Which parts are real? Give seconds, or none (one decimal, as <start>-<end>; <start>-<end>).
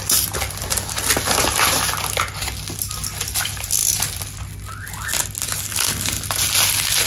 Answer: 0.0-7.1